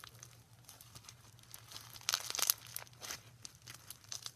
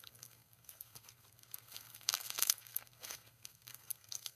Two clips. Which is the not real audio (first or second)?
second